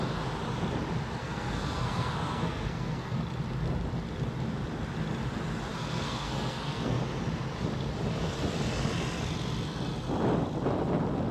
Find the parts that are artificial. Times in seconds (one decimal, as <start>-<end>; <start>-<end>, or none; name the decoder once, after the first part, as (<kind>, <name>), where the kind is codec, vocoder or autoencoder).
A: 1.2-3.2 (codec, SNAC); 5.7-7.0

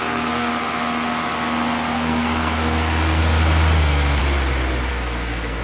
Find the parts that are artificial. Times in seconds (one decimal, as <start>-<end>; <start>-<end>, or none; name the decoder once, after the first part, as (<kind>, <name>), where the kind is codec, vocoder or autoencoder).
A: 0.0-0.5 (codec, SNAC); 1.9-3.2; 3.8-4.2; 4.9-5.6

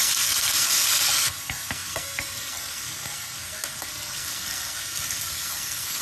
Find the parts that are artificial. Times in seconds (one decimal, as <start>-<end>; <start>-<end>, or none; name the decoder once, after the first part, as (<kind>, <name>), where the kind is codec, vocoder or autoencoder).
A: 0.0-6.0 (codec, SNAC)

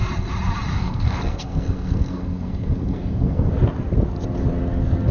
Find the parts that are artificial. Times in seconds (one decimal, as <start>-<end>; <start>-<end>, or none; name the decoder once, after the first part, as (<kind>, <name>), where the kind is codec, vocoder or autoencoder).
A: 0.7-3.5 (codec, SNAC)